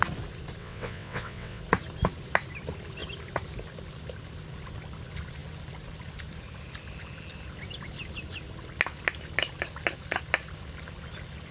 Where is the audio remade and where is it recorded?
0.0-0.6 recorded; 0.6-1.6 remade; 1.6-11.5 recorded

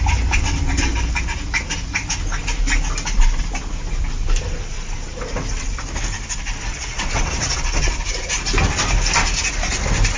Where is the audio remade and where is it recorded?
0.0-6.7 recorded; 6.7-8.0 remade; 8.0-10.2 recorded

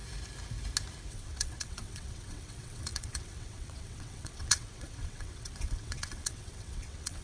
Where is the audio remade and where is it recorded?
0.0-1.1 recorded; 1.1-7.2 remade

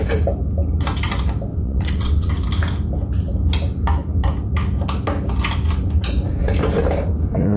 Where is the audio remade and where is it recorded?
0.0-1.5 recorded; 1.5-2.3 remade; 2.3-7.6 recorded

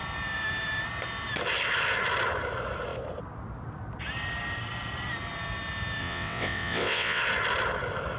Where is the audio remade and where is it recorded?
0.0-6.0 recorded; 6.0-7.2 remade; 7.2-8.2 recorded

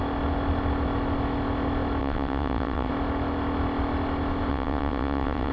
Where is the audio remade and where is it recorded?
0.0-2.0 recorded; 2.0-2.9 remade; 2.9-4.5 recorded; 4.5-5.5 remade